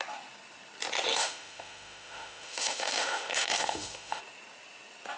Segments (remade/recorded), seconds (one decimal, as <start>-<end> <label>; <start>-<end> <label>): 0.0-1.1 recorded; 1.1-4.2 remade; 4.2-5.2 recorded

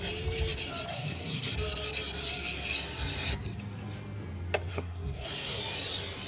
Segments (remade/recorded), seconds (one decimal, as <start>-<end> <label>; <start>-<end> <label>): 0.0-0.9 recorded; 0.9-1.5 remade; 1.5-4.7 recorded; 4.7-5.6 remade; 5.6-6.3 recorded

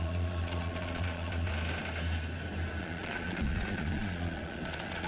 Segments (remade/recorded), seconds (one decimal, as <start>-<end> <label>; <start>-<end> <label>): 0.0-1.5 remade; 1.5-2.8 recorded; 2.8-5.1 remade

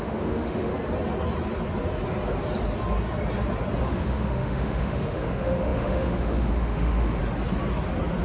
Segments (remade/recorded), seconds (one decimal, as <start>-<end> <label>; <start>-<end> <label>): 0.0-0.7 remade; 0.7-3.8 recorded; 3.8-7.2 remade; 7.2-8.2 recorded

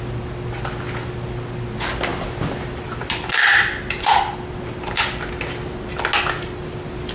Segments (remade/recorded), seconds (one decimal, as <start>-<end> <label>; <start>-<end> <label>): 0.0-2.1 recorded; 2.1-5.0 remade; 5.0-7.1 recorded

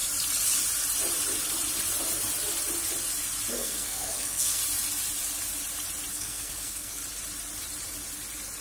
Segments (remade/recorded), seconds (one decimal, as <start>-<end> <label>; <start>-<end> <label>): 0.0-3.5 recorded; 3.5-4.6 remade; 4.6-6.1 recorded; 6.1-7.0 remade; 7.0-8.6 recorded

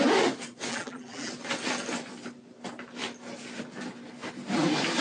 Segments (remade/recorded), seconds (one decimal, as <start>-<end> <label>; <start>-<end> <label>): 0.0-0.7 recorded; 0.7-1.3 remade; 1.3-5.0 recorded